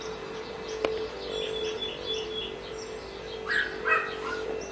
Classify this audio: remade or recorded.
recorded